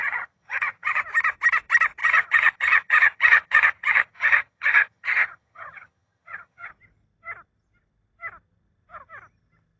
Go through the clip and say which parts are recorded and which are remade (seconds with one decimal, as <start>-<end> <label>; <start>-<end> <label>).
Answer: 0.0-1.0 remade; 1.0-2.0 recorded; 2.0-6.7 remade; 6.7-9.8 recorded